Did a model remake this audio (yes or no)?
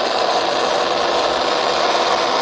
no